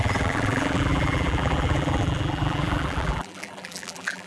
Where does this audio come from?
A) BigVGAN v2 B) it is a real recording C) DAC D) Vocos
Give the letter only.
A